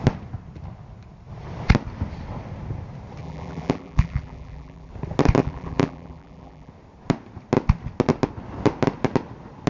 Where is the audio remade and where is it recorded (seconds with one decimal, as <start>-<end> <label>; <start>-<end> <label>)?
0.0-3.2 recorded; 3.2-4.9 remade; 4.9-5.4 recorded; 5.4-6.7 remade; 6.7-9.7 recorded